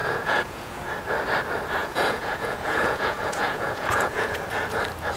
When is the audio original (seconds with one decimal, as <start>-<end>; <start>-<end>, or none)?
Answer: 0.8-1.8; 4.4-5.2